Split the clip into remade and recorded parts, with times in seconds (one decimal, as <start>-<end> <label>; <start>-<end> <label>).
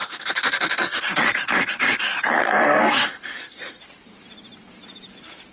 0.0-1.0 remade; 1.0-2.4 recorded; 2.4-3.8 remade; 3.8-5.5 recorded